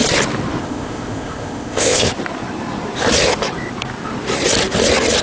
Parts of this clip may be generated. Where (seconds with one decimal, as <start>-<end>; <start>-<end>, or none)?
0.6-2.1